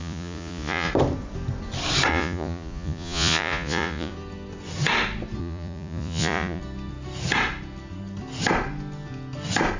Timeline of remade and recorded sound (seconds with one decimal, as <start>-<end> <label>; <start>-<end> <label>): 0.0-0.9 remade; 0.9-2.1 recorded; 2.1-4.1 remade; 4.1-5.4 recorded; 5.4-6.6 remade; 6.6-9.8 recorded